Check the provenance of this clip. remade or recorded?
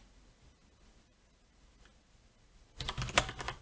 recorded